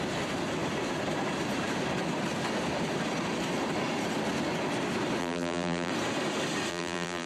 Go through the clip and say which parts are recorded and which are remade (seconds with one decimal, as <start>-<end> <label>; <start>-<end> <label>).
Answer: 0.0-5.2 recorded; 5.2-5.9 remade; 5.9-6.7 recorded; 6.7-7.3 remade